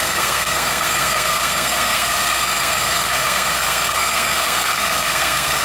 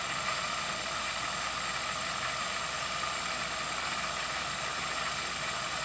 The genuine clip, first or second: second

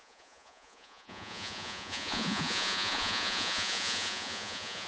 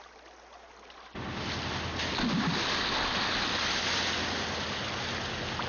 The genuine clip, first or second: second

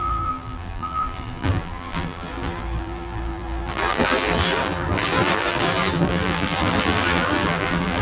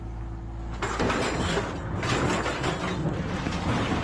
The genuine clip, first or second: second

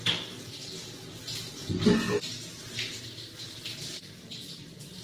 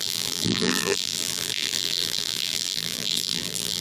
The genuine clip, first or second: first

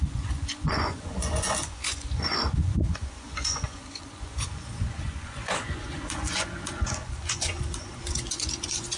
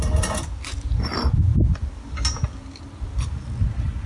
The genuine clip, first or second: second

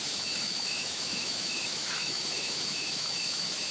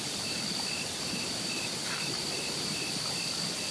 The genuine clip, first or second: second